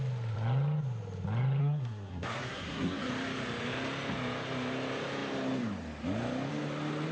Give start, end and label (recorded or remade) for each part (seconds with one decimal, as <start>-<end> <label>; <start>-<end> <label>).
0.0-1.6 recorded; 1.6-3.1 remade; 3.1-7.1 recorded